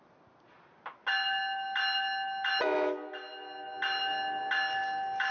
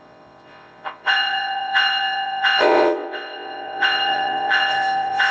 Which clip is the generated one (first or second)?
second